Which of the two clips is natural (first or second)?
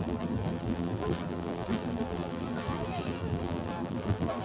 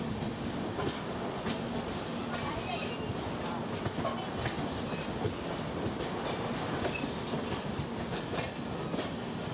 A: second